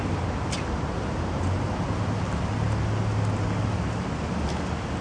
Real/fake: real